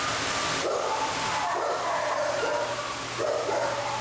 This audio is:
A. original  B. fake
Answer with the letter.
A